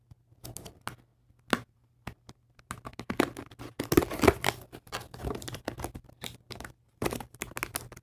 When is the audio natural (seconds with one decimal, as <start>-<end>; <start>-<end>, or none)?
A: 0.0-8.0